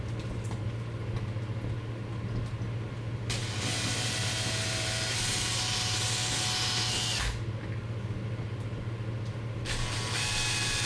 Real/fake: real